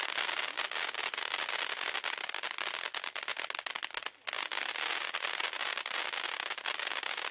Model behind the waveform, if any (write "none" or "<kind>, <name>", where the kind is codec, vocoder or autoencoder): none